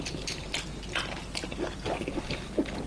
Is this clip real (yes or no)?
yes